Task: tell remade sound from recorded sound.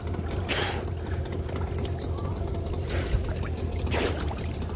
recorded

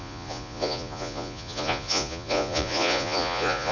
remade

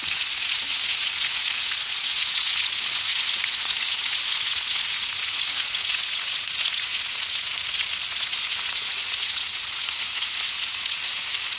remade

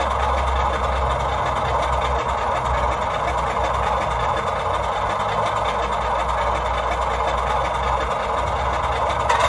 recorded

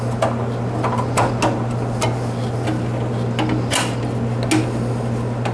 recorded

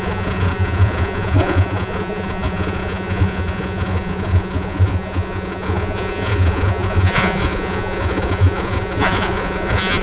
remade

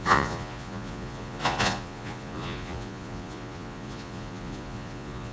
remade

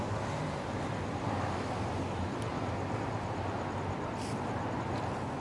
recorded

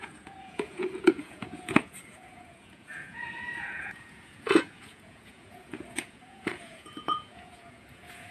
remade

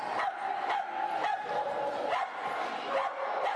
recorded